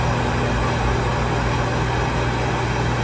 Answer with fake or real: real